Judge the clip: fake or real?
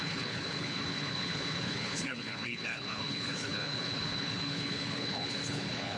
fake